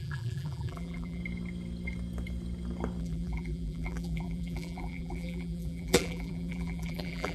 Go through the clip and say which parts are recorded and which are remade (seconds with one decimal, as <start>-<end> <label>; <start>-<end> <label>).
0.0-1.2 remade; 1.2-3.0 recorded; 3.0-7.3 remade